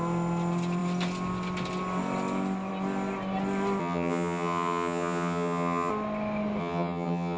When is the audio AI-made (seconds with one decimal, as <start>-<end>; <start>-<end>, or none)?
3.8-5.9; 6.6-7.4

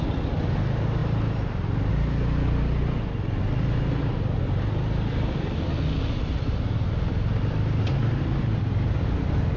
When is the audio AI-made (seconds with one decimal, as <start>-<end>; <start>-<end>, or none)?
none

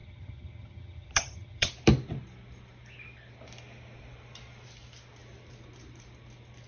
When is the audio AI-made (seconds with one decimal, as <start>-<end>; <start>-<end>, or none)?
0.0-1.7

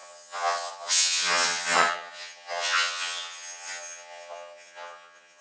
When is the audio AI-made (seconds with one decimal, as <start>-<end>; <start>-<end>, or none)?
0.0-5.4

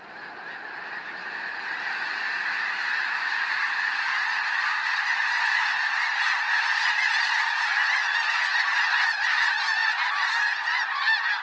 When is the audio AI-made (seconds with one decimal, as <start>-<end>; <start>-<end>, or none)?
none